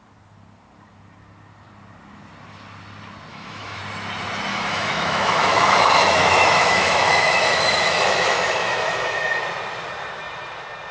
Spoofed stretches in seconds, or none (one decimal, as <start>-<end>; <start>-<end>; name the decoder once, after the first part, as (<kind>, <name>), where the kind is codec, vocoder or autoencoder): 3.3-3.8 (autoencoder, DAC-VAE); 4.5-9.4